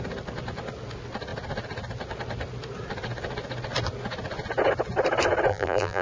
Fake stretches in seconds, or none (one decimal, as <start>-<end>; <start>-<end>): 5.5-6.0